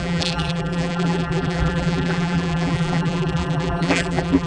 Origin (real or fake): fake